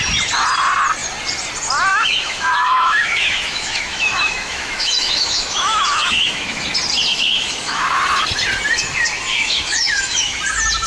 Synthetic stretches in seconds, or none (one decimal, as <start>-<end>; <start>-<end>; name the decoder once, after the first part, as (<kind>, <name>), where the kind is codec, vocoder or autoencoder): 1.9-6.6 (autoencoder, DAC-VAE); 7.1-7.8; 9.3-10.4

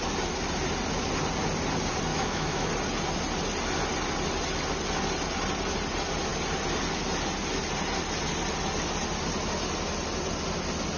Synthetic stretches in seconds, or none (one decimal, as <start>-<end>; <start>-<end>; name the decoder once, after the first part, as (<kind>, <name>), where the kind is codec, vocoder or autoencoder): 2.1-2.7 (autoencoder, DAC-VAE)

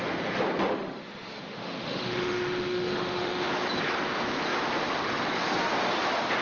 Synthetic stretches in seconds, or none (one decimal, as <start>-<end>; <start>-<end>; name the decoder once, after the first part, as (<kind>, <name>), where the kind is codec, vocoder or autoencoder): 0.7-3.5 (autoencoder, DAC-VAE)

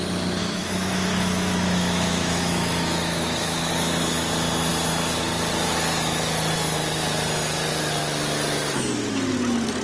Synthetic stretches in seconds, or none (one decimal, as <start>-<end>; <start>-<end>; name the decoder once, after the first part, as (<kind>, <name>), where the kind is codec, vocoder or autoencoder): 0.4-3.7 (autoencoder, DAC-VAE)

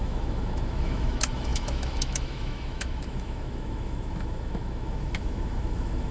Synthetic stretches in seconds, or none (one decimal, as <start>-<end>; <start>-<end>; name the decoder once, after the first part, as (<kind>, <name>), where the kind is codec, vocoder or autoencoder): 0.0-6.1 (autoencoder, DAC-VAE)

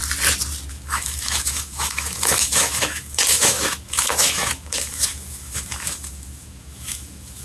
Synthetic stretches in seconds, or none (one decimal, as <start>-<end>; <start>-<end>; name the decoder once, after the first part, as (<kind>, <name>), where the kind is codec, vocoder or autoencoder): 0.7-7.4 (autoencoder, DAC-VAE)